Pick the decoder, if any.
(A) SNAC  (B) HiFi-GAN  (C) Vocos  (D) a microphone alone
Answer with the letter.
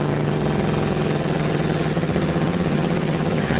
B